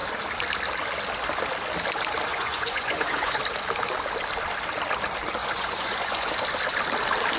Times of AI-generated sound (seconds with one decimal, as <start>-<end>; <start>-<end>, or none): 2.3-3.4; 5.4-6.3